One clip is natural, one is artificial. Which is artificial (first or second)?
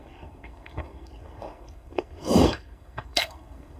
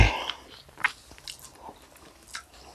first